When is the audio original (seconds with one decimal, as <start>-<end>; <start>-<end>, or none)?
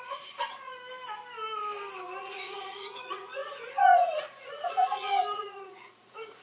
0.7-2.2